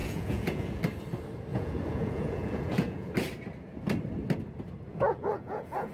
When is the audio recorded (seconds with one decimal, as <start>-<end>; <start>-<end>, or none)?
0.8-1.5; 3.1-4.9